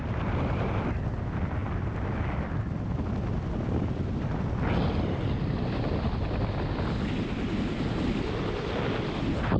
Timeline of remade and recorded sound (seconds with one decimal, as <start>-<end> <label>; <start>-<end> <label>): 0.0-9.6 recorded